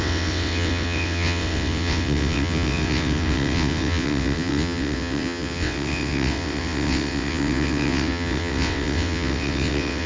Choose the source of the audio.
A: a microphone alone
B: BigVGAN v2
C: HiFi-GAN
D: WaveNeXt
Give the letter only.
D